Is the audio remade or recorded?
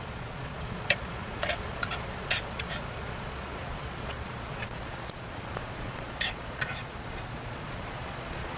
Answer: remade